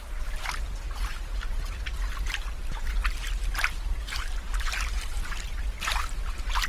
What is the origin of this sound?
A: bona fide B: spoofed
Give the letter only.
A